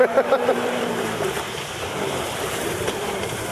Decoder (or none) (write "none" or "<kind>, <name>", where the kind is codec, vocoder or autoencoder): vocoder, BigVGAN v2